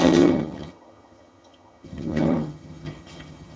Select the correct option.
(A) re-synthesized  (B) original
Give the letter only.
A